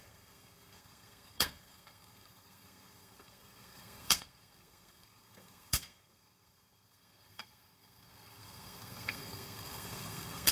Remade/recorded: remade